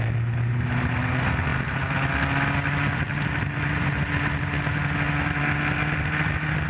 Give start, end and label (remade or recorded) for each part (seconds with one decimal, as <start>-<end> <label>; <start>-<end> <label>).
0.0-6.7 recorded